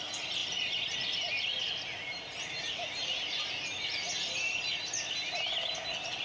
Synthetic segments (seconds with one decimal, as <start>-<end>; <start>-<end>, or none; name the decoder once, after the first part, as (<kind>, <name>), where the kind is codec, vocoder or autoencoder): none